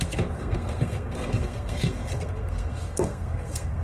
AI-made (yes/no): yes